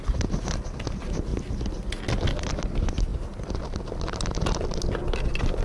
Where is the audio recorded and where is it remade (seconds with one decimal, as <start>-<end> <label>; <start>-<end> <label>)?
0.0-5.6 recorded